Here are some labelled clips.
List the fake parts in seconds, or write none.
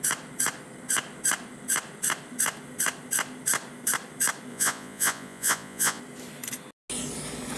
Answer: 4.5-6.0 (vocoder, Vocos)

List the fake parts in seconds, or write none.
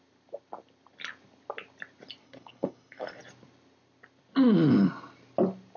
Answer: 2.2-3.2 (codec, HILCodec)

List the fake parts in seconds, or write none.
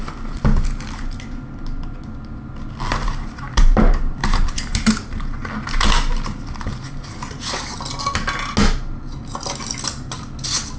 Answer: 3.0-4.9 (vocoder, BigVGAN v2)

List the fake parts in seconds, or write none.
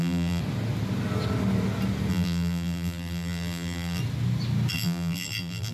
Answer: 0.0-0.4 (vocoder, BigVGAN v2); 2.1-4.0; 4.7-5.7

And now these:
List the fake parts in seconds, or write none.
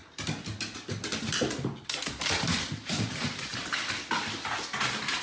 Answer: 3.5-4.0 (vocoder, BigVGAN v2)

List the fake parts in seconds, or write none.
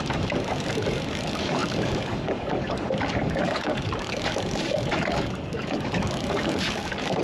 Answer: 0.0-7.2 (codec, DAC)